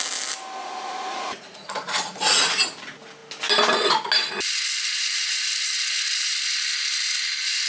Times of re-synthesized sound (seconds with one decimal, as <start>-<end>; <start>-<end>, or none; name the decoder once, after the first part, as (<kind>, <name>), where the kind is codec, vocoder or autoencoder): 0.6-2.5 (vocoder, Vocos)